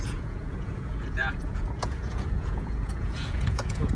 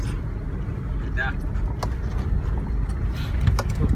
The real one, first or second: second